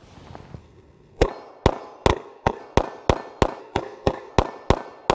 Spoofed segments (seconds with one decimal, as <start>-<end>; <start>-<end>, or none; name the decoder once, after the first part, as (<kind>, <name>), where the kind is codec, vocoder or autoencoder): 0.6-1.3 (codec, SNAC); 2.1-2.6; 3.6-4.3